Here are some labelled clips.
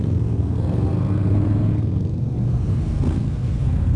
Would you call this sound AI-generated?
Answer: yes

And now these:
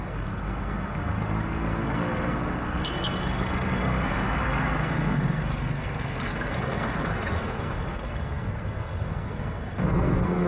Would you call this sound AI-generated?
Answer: yes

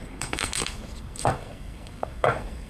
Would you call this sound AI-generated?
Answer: yes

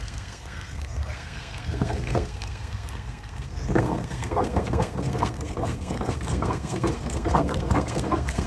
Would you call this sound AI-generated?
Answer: yes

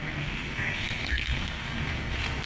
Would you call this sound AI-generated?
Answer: yes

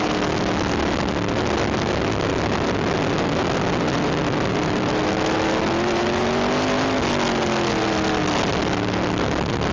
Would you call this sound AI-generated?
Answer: no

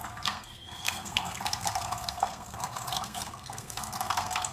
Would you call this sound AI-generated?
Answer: yes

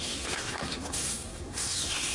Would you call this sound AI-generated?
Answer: yes